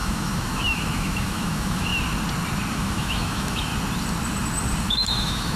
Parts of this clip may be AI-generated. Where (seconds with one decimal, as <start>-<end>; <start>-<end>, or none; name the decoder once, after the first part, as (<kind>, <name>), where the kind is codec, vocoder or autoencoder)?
0.0-1.9 (autoencoder, DAC-VAE); 2.7-3.7; 4.8-5.6